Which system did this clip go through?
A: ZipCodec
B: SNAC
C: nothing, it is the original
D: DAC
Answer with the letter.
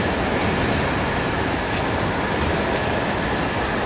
C